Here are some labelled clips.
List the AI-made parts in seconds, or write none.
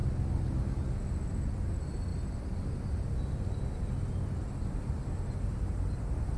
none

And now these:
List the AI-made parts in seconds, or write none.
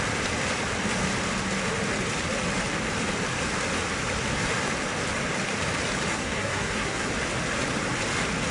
6.1-7.1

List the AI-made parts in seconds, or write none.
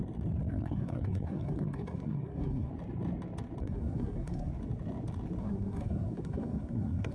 0.5-2.7; 3.6-4.5; 5.4-7.1